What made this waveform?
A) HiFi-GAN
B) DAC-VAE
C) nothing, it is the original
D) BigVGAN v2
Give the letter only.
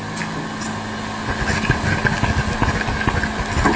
C